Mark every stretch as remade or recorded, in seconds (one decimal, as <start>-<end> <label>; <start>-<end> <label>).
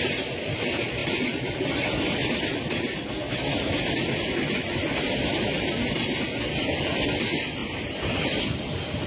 0.0-9.1 recorded